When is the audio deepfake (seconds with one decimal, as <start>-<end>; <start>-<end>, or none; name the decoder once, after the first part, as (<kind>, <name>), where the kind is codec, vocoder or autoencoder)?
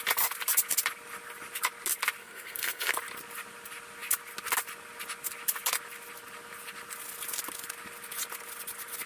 2.2-2.9 (codec, SNAC)